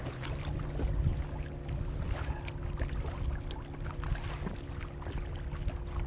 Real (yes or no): yes